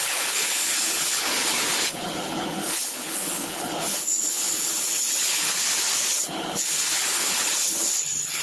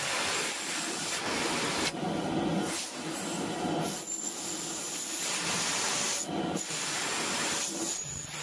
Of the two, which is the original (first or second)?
second